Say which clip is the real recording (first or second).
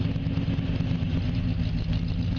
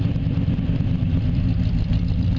first